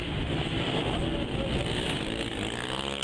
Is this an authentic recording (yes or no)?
yes